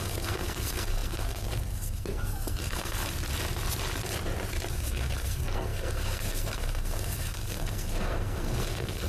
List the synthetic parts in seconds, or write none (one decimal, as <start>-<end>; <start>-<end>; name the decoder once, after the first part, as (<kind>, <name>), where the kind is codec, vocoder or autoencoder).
0.0-3.0 (codec, SNAC); 4.7-9.1